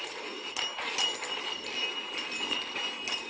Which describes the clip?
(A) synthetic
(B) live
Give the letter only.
B